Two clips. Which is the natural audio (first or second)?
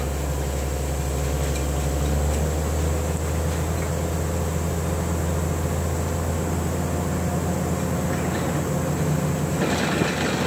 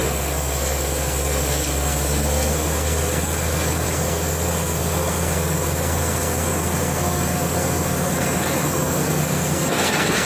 first